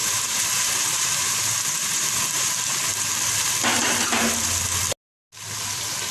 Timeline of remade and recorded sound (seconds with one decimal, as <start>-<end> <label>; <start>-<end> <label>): 0.0-2.5 remade; 2.5-3.7 recorded; 3.7-4.2 remade; 4.2-6.1 recorded